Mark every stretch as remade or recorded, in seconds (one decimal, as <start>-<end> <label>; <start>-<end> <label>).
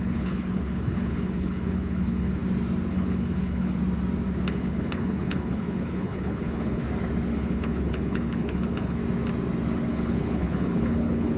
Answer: 0.0-2.4 remade; 2.4-2.9 recorded; 2.9-3.8 remade; 3.8-4.5 recorded; 4.5-6.8 remade; 6.8-7.3 recorded; 7.3-9.0 remade; 9.0-9.9 recorded; 9.9-11.4 remade